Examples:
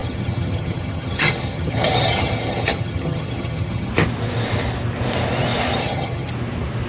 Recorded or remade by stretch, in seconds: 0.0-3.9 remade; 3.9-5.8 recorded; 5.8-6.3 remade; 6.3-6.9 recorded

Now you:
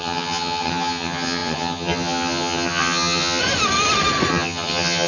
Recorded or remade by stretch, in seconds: 0.0-3.4 remade; 3.4-4.3 recorded; 4.3-5.1 remade

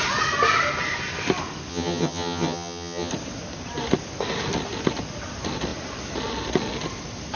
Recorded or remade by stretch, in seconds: 0.0-1.7 recorded; 1.7-3.1 remade; 3.1-7.4 recorded

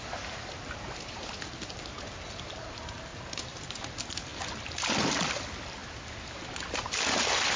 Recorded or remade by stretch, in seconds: 0.0-7.6 recorded

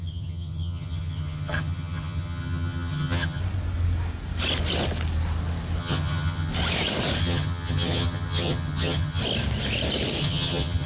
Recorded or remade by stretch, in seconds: 0.0-3.4 remade; 3.4-5.8 recorded; 5.8-6.5 remade; 6.5-7.2 recorded; 7.2-9.2 remade; 9.2-10.2 recorded; 10.2-10.9 remade

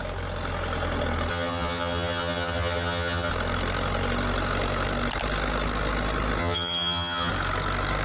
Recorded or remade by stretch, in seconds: 0.0-1.3 recorded; 1.3-3.3 remade; 3.3-6.4 recorded; 6.4-7.3 remade; 7.3-8.0 recorded